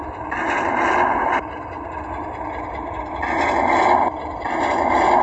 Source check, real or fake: real